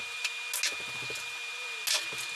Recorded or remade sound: recorded